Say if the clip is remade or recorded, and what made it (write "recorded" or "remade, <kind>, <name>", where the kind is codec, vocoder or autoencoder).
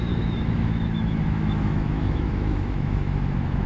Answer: remade, autoencoder, DAC-VAE